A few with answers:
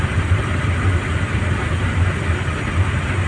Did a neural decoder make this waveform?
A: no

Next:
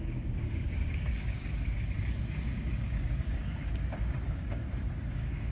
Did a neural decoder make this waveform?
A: yes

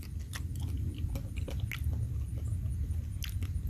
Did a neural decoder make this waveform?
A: no